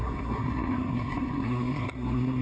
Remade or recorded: remade